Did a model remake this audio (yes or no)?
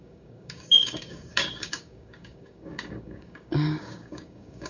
yes